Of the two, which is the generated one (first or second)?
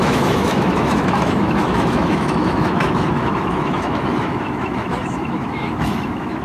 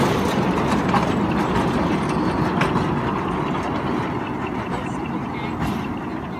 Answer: first